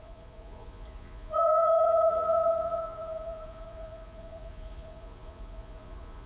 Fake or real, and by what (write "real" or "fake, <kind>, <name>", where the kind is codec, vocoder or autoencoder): fake, vocoder, Vocos